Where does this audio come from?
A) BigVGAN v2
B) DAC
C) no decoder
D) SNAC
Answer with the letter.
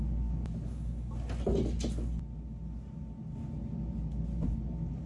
C